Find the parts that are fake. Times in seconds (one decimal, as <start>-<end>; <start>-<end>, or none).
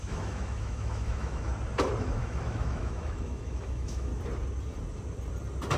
0.0-1.5; 2.0-4.1